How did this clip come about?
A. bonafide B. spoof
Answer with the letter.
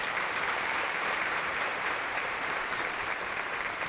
B